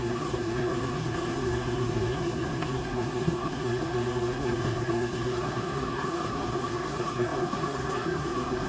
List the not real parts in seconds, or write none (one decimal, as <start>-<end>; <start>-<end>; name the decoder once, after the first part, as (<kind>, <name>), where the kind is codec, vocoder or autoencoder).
0.0-8.7 (codec, SNAC)